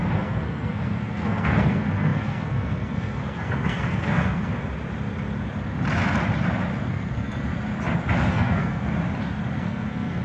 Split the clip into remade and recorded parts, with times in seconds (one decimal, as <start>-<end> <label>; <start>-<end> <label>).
0.0-4.5 remade; 4.5-6.9 recorded; 6.9-7.5 remade; 7.5-8.3 recorded; 8.3-8.9 remade; 8.9-9.5 recorded; 9.5-10.2 remade